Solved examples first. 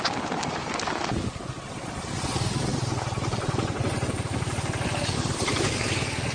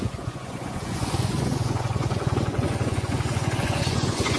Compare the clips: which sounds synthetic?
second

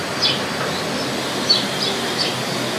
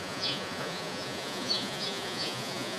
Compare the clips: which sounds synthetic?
second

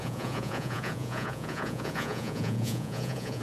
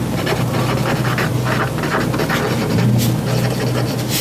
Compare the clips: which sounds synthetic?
first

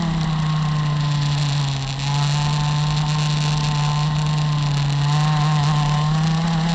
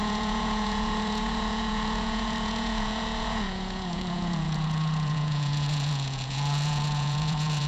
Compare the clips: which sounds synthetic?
second